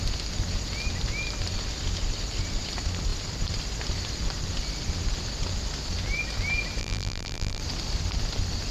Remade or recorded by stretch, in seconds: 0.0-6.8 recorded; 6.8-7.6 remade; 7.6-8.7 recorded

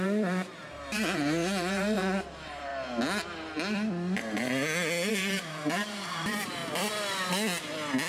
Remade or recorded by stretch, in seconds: 0.0-2.7 remade; 2.7-5.1 recorded; 5.1-6.6 remade; 6.6-8.1 recorded